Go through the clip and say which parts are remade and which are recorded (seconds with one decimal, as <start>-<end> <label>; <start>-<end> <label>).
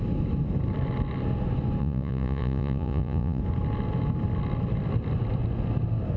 0.0-1.8 recorded; 1.8-3.4 remade; 3.4-6.2 recorded